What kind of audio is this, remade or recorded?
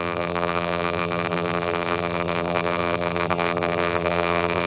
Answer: remade